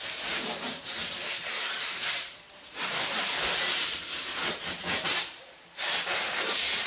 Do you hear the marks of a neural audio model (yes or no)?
yes